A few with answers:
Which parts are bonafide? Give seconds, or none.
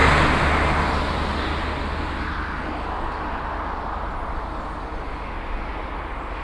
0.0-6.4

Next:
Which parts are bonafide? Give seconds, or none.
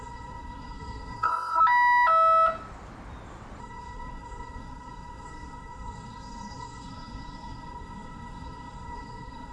1.6-3.6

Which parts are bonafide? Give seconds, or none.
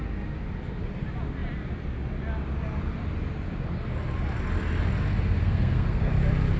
0.0-5.4; 6.1-6.6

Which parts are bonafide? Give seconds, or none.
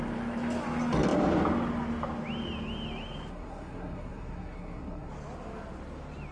0.0-3.3; 5.1-6.3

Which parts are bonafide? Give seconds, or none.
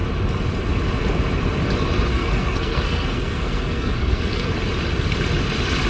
0.0-2.1; 4.5-5.9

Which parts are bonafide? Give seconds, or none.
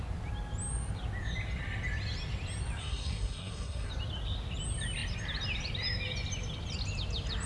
0.0-2.8; 3.9-7.5